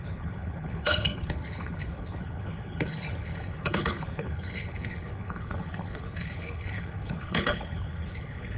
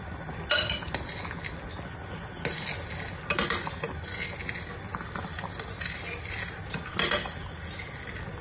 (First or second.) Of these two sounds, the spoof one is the first